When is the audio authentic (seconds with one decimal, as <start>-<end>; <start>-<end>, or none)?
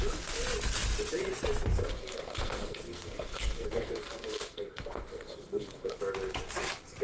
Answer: 0.0-1.8; 6.0-7.0